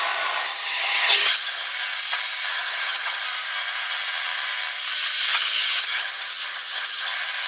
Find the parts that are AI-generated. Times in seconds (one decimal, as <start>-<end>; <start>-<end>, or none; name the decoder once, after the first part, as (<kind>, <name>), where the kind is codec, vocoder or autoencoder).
0.5-1.7 (vocoder, HiFi-GAN); 2.5-3.2; 5.3-7.1